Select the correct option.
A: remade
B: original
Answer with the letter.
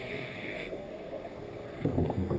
A